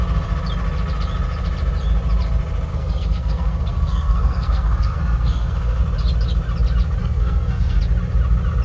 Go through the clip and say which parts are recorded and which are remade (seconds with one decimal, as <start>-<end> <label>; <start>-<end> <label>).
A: 0.0-2.7 recorded; 2.7-5.8 remade; 5.8-7.0 recorded; 7.0-7.8 remade; 7.8-8.6 recorded